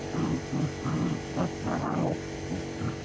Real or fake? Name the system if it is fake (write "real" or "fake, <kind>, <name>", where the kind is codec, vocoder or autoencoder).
real